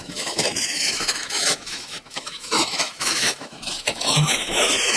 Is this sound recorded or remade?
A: remade